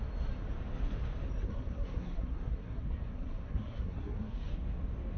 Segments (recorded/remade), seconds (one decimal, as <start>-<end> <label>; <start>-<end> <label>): 0.0-1.4 recorded; 1.4-4.5 remade; 4.5-5.2 recorded